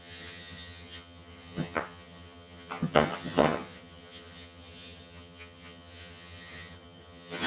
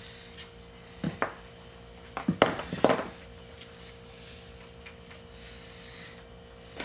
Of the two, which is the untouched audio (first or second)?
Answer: second